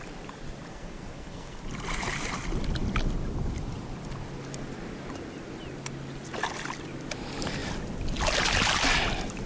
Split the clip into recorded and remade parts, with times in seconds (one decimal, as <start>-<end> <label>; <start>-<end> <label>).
0.0-0.7 recorded; 0.7-1.6 remade; 1.6-9.5 recorded

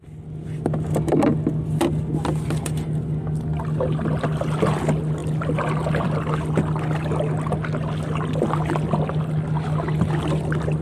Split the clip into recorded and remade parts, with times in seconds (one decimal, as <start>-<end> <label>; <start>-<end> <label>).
0.0-10.8 recorded

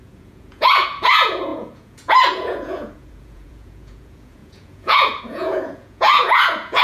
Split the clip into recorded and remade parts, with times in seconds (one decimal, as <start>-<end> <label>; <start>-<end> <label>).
0.0-6.8 remade

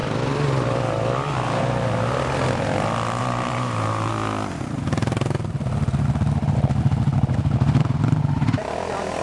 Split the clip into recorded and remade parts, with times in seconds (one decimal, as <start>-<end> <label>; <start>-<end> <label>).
0.0-3.2 recorded; 3.2-4.1 remade; 4.1-9.2 recorded

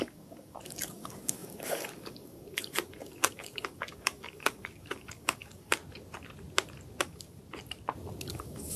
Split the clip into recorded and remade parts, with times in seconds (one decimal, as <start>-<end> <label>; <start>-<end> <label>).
0.0-5.8 remade; 5.8-7.0 recorded; 7.0-7.4 remade; 7.4-8.3 recorded; 8.3-8.8 remade

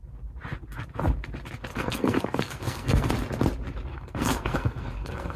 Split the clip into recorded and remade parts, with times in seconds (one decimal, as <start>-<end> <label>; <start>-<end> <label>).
0.0-1.7 recorded; 1.7-3.1 remade; 3.1-3.9 recorded; 3.9-5.4 remade

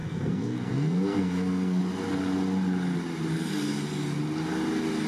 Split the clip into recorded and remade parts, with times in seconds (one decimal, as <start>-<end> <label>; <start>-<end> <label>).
0.0-1.8 remade; 1.8-5.1 recorded